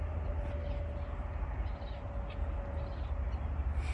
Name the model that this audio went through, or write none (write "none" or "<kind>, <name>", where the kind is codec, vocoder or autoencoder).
none